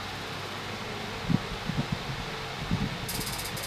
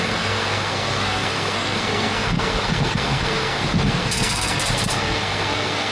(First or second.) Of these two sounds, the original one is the first